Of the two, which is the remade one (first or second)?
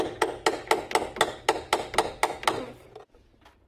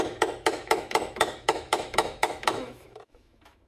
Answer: second